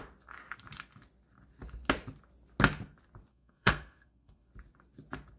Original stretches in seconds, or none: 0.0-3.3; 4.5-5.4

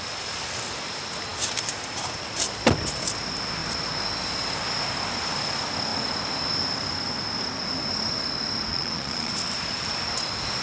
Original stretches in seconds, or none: 0.0-8.7; 9.3-10.6

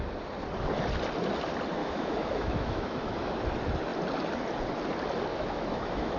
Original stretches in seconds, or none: 0.0-1.8; 3.4-5.3

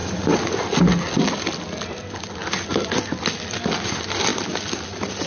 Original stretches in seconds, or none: 0.8-4.3; 4.8-5.3

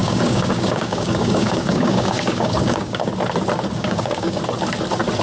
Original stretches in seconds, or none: 3.1-3.8; 4.4-5.2

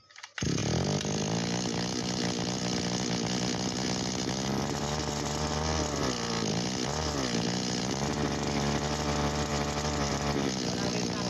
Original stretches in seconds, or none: 0.0-11.3